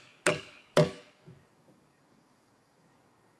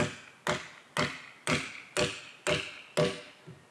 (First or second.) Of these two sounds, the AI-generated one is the first